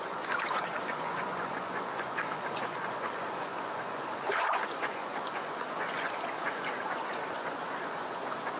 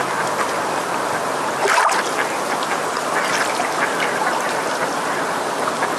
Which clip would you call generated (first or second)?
first